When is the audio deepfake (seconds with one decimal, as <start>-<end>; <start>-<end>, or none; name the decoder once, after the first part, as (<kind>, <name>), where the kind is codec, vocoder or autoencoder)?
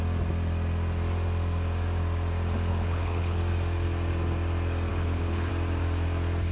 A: 2.7-3.4 (codec, HILCodec); 4.9-5.5